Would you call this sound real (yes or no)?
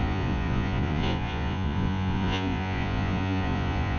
no